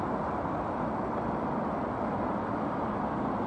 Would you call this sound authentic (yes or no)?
yes